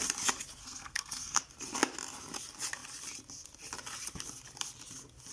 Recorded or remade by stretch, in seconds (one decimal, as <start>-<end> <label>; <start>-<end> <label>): 0.0-0.6 recorded; 0.6-1.4 remade; 1.4-5.3 recorded